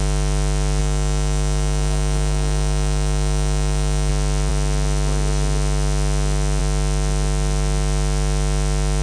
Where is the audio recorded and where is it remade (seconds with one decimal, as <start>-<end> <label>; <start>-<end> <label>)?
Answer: 0.0-0.8 recorded; 0.8-4.1 remade; 4.1-9.0 recorded